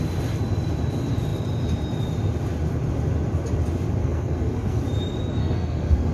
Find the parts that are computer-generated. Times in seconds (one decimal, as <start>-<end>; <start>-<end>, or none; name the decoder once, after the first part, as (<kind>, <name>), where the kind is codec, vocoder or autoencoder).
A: 4.0-4.8 (codec, SNAC); 5.4-6.1